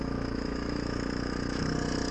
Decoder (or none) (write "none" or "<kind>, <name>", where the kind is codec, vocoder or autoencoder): autoencoder, DAC-VAE